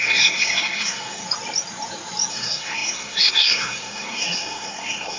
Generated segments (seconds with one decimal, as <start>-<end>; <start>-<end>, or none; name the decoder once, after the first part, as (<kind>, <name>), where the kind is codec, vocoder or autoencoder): 0.0-1.2 (codec, SNAC); 2.3-5.2